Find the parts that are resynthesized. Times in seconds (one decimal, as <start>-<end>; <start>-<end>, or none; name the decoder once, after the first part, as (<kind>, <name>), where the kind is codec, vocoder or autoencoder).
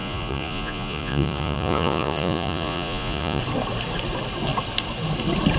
0.0-3.4 (vocoder, Vocos)